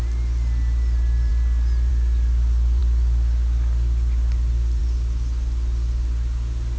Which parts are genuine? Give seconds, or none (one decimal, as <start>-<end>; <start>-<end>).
0.0-6.8